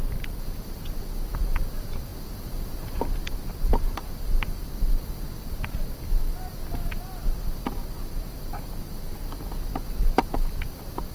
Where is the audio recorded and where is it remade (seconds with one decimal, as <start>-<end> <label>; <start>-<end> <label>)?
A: 0.0-7.8 remade; 7.8-8.9 recorded; 8.9-11.1 remade